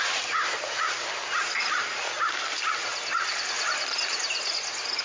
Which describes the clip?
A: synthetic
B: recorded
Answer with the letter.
B